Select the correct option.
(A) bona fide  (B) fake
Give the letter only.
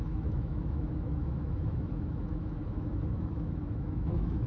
B